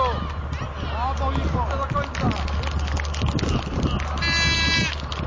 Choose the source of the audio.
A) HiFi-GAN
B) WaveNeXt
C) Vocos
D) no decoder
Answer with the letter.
D